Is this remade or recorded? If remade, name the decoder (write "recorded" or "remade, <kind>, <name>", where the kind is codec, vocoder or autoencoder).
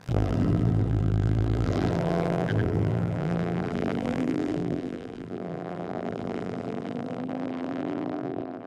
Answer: remade, vocoder, BigVGAN v2